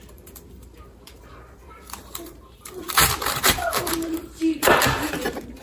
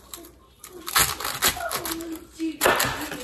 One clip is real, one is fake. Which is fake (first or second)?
first